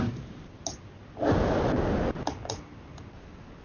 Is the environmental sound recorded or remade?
recorded